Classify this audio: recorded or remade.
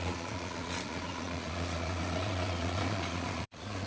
remade